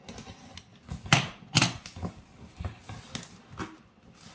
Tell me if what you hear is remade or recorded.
recorded